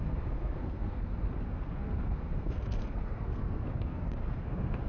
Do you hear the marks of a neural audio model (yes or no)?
yes